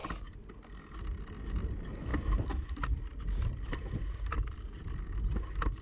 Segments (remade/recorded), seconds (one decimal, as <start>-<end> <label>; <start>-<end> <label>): 0.0-5.8 recorded